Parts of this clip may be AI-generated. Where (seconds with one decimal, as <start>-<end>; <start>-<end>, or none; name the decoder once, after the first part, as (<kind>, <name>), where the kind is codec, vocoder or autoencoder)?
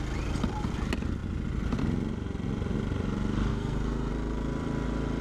3.5-4.1 (codec, SNAC)